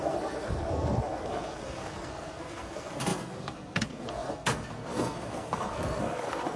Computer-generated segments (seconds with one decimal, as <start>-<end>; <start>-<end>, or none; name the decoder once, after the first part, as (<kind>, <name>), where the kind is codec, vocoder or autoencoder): 0.0-6.6 (codec, SNAC)